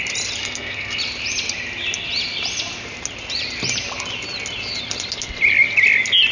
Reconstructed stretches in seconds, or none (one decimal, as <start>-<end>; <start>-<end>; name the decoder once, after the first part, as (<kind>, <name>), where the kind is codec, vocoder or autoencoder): 0.4-1.0 (codec, SNAC)